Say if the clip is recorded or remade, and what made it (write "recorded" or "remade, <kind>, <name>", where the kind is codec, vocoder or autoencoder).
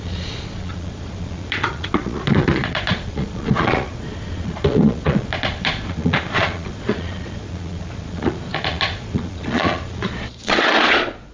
remade, vocoder, Vocos